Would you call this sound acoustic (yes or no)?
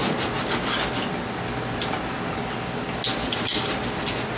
yes